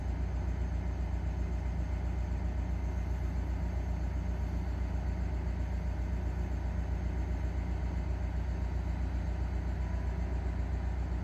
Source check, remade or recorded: recorded